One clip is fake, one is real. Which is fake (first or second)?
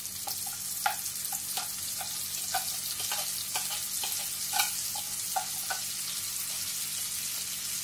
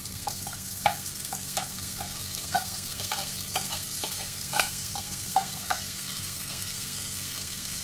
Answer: second